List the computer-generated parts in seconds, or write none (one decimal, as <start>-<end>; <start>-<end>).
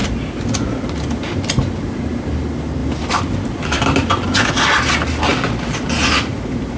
2.8-4.6; 5.3-6.8